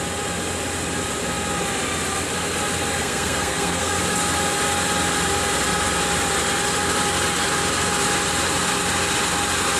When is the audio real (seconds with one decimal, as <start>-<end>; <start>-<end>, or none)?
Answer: 0.0-3.0; 4.0-9.8